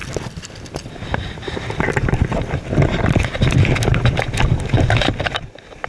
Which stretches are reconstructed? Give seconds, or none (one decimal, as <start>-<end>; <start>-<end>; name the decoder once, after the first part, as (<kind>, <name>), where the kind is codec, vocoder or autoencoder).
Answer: 0.0-3.5 (vocoder, BigVGAN v2)